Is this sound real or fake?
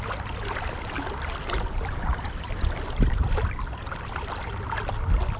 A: real